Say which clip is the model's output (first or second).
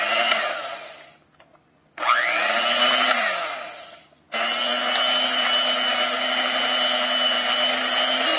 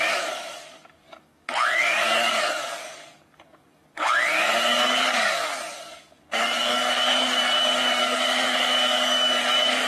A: second